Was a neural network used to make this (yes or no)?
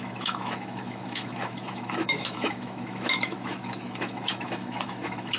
yes